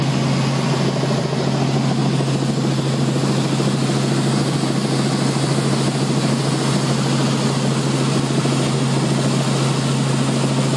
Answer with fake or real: real